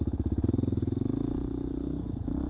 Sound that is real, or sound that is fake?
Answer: real